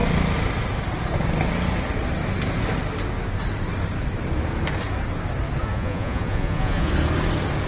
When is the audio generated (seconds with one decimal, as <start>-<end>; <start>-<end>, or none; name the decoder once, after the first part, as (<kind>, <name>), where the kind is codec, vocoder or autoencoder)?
5.6-6.9 (vocoder, Vocos)